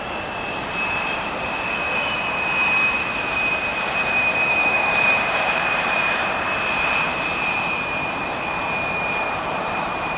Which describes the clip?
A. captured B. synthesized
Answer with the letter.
B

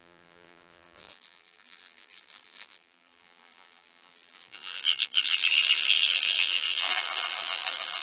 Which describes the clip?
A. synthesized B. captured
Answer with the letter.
A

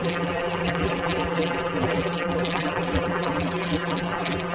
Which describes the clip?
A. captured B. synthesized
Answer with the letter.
B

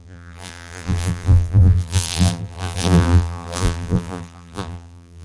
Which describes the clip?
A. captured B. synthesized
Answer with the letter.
B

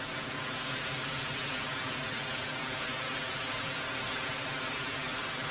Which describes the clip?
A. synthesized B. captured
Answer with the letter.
B